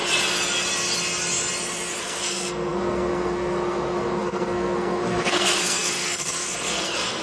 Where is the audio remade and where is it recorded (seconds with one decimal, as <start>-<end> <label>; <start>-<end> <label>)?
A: 0.0-2.0 recorded; 2.0-7.2 remade